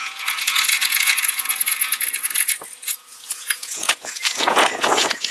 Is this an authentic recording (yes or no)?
no